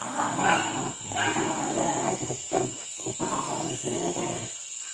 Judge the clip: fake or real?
fake